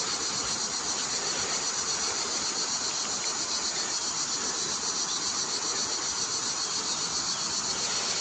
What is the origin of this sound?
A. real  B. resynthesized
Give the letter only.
A